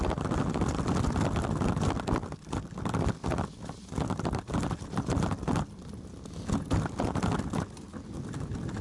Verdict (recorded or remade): recorded